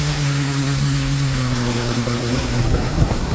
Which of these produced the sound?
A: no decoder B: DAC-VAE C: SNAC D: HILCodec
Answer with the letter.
C